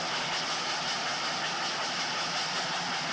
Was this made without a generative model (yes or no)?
yes